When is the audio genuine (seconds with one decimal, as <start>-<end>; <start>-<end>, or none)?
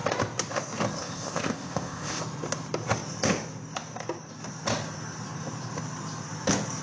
0.0-1.0; 2.2-6.8